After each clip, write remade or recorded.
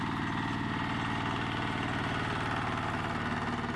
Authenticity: recorded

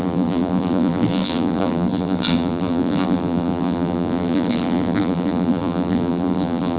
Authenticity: remade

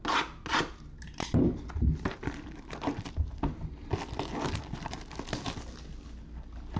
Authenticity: recorded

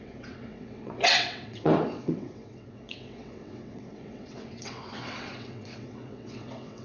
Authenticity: remade